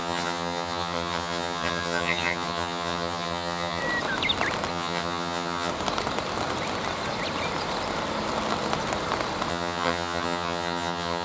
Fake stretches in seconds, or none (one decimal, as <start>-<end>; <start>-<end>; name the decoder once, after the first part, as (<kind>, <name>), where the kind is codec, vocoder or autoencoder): 0.0-3.8 (vocoder, HiFi-GAN); 4.7-5.7; 9.5-11.2